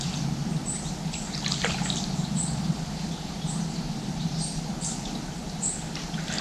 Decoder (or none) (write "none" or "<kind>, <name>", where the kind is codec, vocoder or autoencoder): vocoder, BigVGAN v2